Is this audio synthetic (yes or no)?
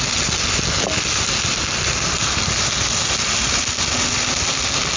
no